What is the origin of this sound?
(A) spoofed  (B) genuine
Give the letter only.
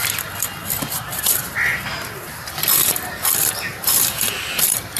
A